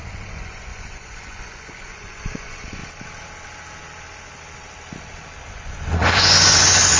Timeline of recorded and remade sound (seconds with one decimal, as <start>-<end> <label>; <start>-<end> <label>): 0.0-2.8 remade; 2.8-5.5 recorded; 5.5-7.0 remade